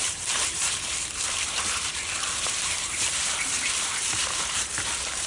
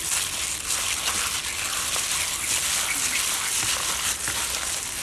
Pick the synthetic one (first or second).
first